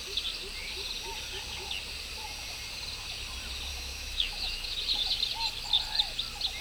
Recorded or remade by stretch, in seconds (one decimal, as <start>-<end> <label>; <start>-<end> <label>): 0.0-3.7 recorded; 3.7-4.8 remade; 4.8-6.6 recorded